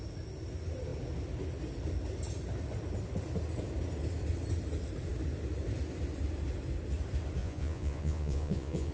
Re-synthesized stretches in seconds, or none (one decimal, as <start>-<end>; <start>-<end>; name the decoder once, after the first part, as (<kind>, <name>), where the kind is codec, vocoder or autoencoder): 7.4-8.9 (vocoder, Vocos)

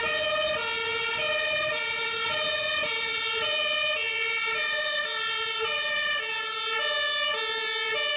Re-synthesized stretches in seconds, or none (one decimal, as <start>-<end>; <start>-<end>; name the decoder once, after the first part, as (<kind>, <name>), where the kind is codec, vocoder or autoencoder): none

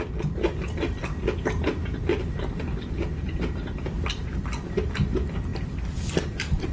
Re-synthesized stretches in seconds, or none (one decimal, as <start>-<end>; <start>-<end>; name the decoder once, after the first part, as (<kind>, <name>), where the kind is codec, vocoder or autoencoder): none

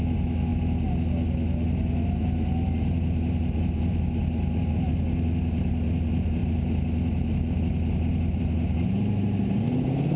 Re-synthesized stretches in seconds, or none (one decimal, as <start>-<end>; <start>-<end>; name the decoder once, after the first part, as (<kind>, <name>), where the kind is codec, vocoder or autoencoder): none

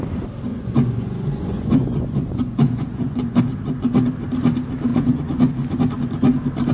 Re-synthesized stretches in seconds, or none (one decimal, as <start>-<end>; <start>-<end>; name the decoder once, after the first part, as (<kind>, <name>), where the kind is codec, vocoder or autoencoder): 0.5-3.4 (vocoder, Vocos); 4.9-5.5